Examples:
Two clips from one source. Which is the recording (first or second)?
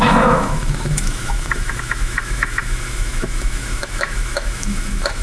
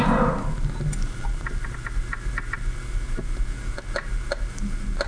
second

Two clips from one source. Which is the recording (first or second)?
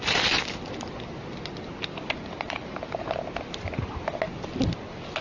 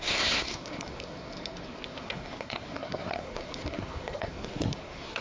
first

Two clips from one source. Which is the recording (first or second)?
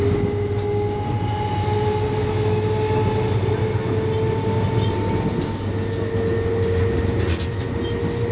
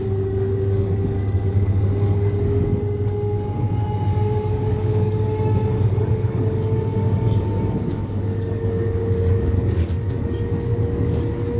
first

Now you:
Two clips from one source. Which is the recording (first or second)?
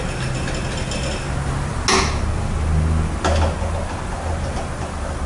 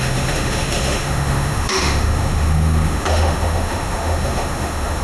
first